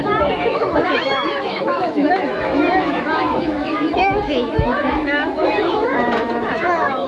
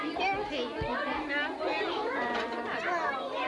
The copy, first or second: first